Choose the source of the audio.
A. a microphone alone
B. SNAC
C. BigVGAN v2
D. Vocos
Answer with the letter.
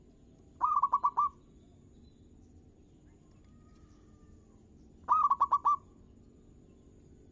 A